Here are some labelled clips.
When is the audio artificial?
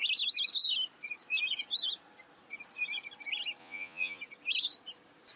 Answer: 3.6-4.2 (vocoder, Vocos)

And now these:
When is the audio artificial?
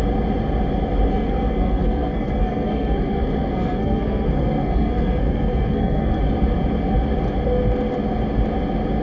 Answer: 1.1-6.2 (codec, SNAC)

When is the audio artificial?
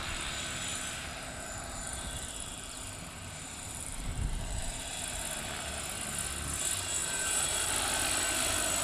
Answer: 0.7-5.0 (vocoder, BigVGAN v2); 7.0-7.7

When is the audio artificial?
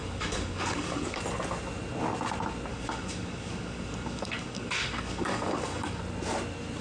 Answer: 0.0-1.2 (codec, DAC); 2.7-6.0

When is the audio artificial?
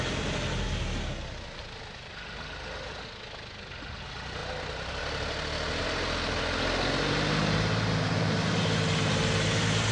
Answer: none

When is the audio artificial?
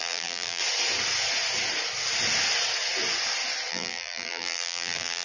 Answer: 0.0-0.6 (vocoder, BigVGAN v2); 3.7-5.2